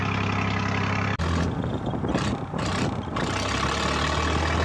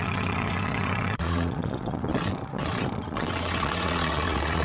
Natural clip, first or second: first